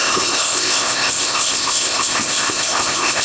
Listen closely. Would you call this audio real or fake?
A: fake